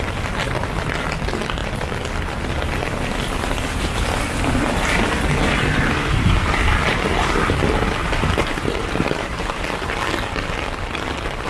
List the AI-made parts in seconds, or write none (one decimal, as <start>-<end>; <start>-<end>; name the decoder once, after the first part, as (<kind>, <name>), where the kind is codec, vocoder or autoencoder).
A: 8.0-9.6 (vocoder, BigVGAN v2)